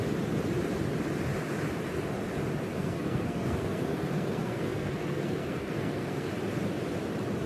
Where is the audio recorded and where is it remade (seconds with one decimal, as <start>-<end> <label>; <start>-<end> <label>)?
0.0-2.7 recorded; 2.7-6.3 remade; 6.3-7.5 recorded